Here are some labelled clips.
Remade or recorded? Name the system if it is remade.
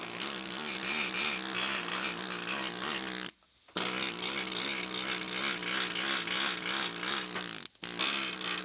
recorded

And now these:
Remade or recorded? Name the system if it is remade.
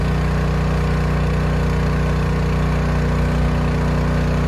recorded